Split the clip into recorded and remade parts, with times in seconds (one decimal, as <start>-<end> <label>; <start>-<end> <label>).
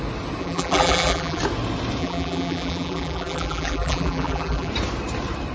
0.0-0.4 recorded; 0.4-1.4 remade; 1.4-2.0 recorded; 2.0-4.7 remade; 4.7-5.5 recorded